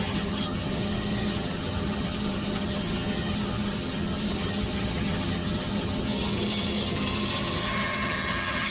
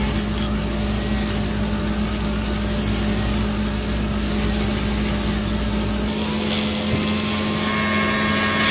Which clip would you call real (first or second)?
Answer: second